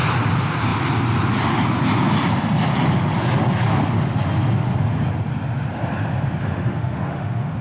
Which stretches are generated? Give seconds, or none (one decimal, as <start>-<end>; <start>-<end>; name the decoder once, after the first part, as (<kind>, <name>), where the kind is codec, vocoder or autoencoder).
6.4-7.6 (autoencoder, DAC-VAE)